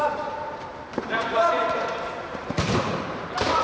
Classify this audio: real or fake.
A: fake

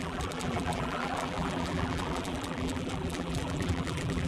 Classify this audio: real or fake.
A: fake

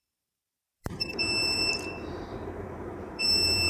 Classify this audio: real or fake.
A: fake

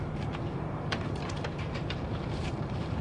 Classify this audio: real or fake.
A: fake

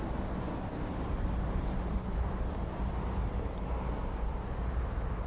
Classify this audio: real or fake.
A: fake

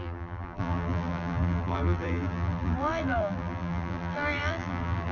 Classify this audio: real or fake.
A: fake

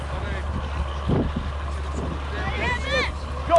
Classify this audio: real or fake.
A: real